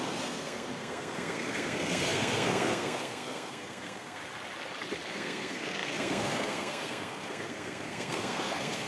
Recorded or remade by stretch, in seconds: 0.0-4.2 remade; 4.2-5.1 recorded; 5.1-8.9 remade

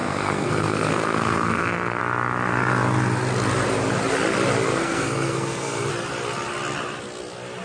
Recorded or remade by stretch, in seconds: 0.0-2.0 remade; 2.0-4.7 recorded; 4.7-5.9 remade; 5.9-7.6 recorded

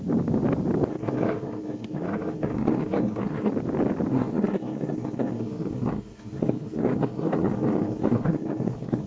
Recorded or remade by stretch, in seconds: 0.0-0.9 recorded; 0.9-3.5 remade; 3.5-4.1 recorded; 4.1-9.1 remade

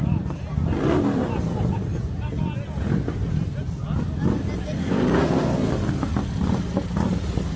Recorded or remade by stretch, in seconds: 0.0-4.8 recorded; 4.8-5.7 remade; 5.7-7.6 recorded

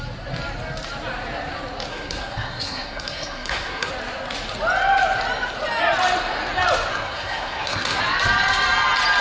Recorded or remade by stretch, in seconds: 0.0-1.9 recorded; 1.9-3.9 remade; 3.9-6.9 recorded; 6.9-8.0 remade; 8.0-9.2 recorded

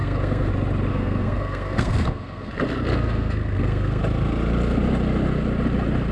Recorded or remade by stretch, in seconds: 0.0-0.5 remade; 0.5-0.9 recorded; 0.9-2.5 remade; 2.5-2.9 recorded; 2.9-4.0 remade; 4.0-6.1 recorded

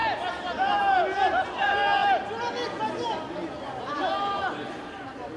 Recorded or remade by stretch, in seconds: 0.0-5.4 recorded

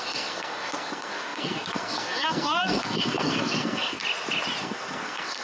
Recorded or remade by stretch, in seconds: 0.0-4.0 remade; 4.0-4.6 recorded; 4.6-5.4 remade